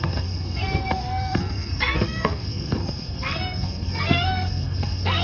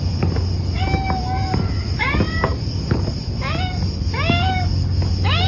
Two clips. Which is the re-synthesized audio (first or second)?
first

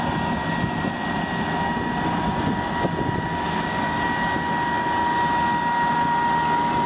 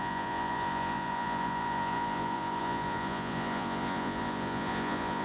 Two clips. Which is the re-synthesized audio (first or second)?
second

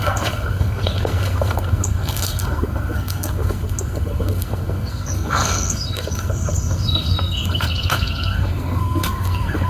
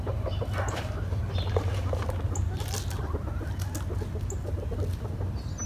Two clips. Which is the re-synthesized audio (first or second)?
first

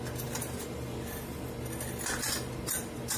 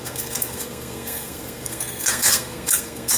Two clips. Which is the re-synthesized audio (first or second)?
second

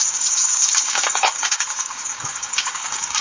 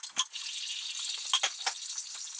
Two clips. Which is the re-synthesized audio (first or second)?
first